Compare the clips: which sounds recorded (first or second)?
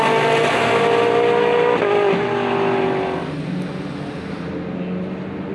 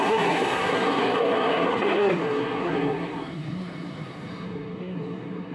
first